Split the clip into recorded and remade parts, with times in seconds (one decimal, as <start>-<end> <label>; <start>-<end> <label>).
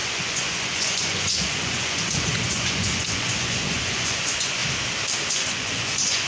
0.0-4.6 remade; 4.6-5.3 recorded; 5.3-6.3 remade